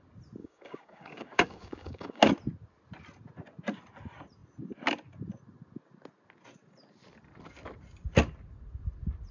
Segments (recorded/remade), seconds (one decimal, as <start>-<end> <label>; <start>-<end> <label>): 0.0-0.4 recorded; 0.4-2.2 remade; 2.2-9.3 recorded